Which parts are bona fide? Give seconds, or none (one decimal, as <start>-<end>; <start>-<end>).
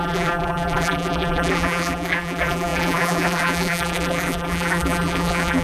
none